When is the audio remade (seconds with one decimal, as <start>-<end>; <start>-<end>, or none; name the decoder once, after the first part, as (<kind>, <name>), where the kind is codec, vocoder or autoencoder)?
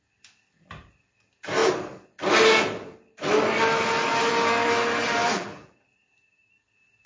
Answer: 5.2-6.5 (vocoder, BigVGAN v2)